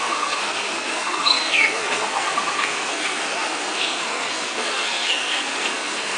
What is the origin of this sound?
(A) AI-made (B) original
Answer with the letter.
A